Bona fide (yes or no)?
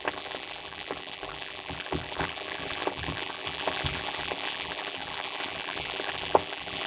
no